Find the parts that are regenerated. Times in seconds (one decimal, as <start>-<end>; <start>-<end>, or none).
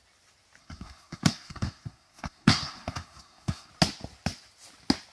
0.6-3.7